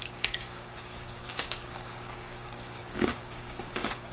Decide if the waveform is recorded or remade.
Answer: remade